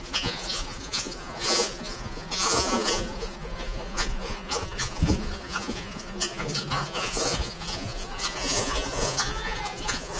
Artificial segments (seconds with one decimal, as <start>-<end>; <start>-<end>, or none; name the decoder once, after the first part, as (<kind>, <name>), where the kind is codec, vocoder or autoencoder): 0.0-10.2 (vocoder, Vocos)